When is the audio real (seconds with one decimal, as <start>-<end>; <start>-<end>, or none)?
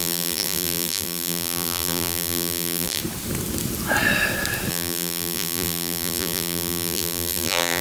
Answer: 3.0-4.7